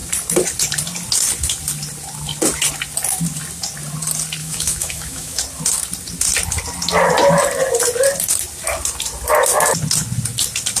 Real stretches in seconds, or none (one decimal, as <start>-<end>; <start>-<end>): 0.0-4.4; 5.4-10.8